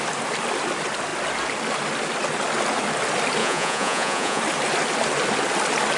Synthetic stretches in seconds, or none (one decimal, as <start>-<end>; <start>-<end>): 3.4-4.4